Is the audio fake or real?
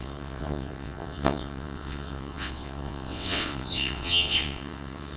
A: fake